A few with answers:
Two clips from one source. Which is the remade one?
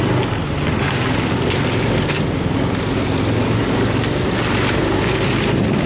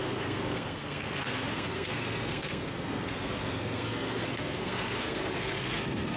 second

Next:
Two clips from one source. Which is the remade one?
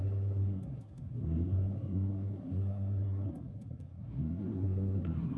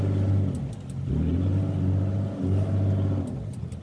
first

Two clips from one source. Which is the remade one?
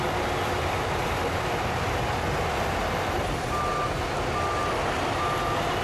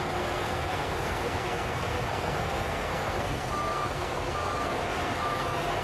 second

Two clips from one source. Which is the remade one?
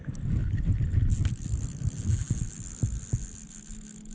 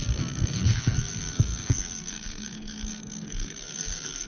second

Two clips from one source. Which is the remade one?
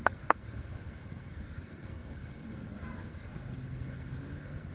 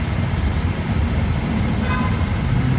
first